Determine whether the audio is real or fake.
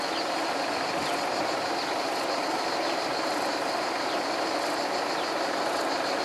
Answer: real